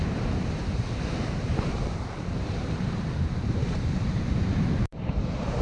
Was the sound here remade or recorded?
remade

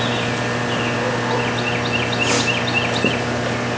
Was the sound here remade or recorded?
recorded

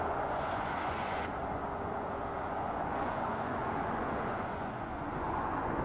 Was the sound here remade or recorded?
remade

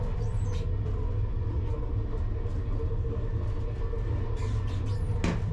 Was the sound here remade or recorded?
recorded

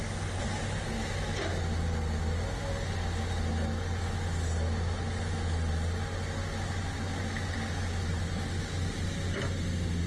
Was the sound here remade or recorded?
recorded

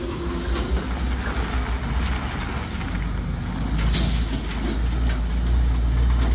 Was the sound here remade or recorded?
recorded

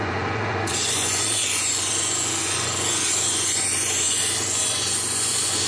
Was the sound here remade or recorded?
remade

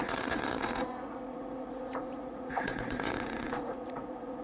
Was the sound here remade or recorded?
remade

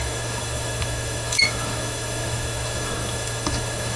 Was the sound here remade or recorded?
remade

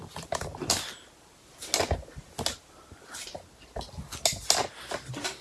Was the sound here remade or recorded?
recorded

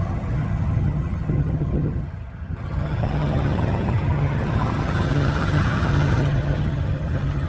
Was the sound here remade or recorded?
remade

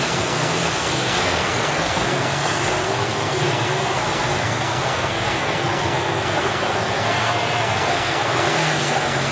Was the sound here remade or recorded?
remade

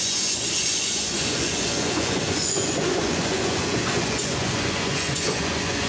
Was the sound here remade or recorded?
remade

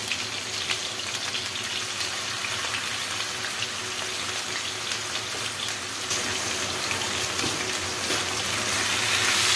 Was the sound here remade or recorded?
recorded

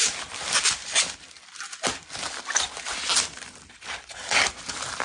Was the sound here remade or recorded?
recorded